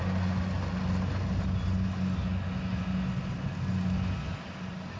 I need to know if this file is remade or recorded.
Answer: recorded